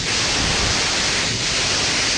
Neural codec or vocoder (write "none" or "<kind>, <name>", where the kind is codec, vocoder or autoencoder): none